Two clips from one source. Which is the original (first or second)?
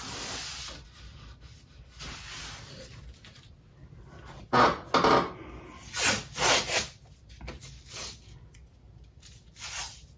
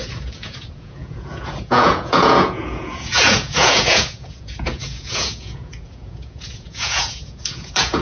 first